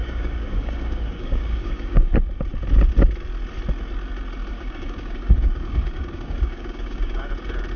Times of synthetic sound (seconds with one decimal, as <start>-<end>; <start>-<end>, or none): 0.0-2.1; 4.5-7.3

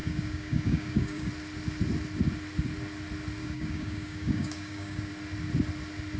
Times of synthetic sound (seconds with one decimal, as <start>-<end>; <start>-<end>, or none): 0.0-1.3; 3.4-5.1

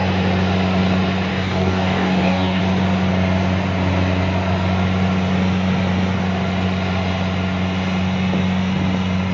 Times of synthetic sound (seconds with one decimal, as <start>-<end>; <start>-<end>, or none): 1.3-2.6

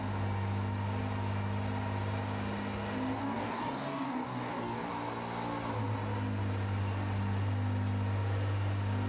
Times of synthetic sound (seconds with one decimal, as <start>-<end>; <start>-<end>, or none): 3.2-4.9

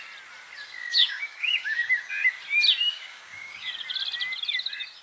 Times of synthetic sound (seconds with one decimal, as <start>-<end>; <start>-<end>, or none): 0.8-2.1; 2.8-3.7

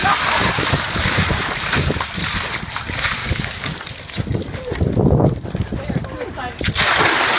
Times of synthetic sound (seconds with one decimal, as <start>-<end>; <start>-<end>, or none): 0.0-2.0; 3.2-3.8

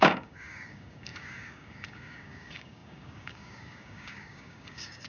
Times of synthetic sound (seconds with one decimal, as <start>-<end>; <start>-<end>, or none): 0.0-5.1